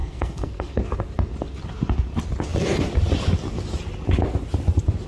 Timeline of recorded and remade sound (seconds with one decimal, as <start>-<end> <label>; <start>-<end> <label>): 0.0-0.8 remade; 0.8-5.1 recorded